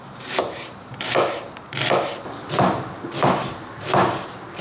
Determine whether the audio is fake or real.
real